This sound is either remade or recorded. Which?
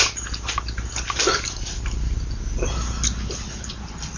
recorded